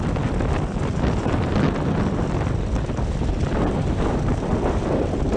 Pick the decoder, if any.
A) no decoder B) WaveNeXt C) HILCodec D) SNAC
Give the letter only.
A